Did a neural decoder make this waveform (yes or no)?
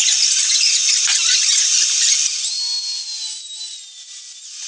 no